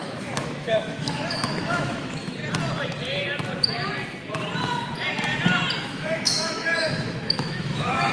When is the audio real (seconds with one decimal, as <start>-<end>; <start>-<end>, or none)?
2.4-5.8